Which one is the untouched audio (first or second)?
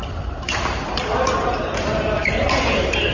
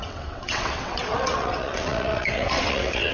first